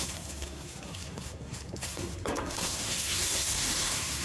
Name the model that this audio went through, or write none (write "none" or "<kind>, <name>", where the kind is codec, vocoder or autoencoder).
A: codec, SNAC